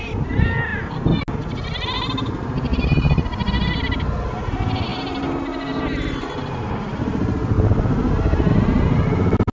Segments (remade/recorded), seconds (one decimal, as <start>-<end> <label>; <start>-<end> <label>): 0.0-9.5 recorded